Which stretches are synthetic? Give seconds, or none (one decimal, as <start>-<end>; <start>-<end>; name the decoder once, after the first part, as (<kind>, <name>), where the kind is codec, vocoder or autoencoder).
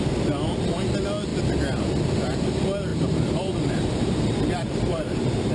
2.9-5.5 (vocoder, BigVGAN v2)